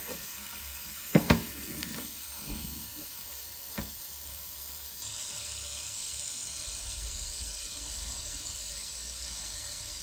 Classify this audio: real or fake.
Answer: fake